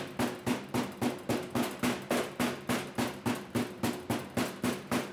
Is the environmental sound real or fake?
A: real